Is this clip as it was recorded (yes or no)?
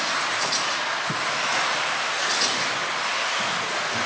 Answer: yes